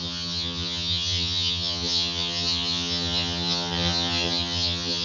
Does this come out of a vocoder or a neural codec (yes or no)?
yes